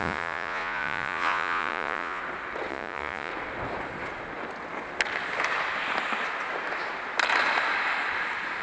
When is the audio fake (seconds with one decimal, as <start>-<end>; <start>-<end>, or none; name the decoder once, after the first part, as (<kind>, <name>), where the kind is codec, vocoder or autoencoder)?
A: 0.0-2.2 (vocoder, Vocos); 2.7-3.3